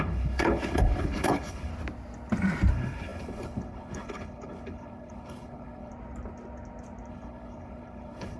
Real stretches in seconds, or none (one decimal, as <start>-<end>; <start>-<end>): 1.7-2.7; 5.9-7.1